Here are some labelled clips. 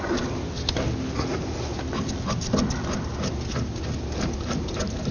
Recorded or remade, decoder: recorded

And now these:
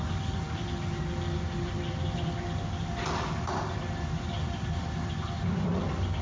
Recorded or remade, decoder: recorded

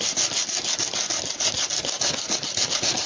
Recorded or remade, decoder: recorded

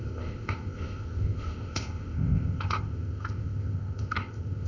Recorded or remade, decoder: remade, codec, ZipCodec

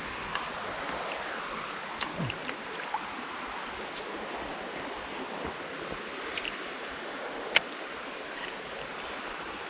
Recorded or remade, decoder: recorded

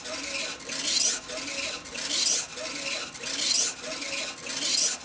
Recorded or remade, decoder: recorded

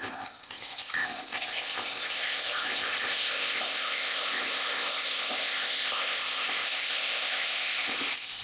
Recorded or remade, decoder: remade, codec, ZipCodec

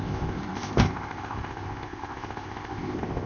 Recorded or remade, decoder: remade, codec, ZipCodec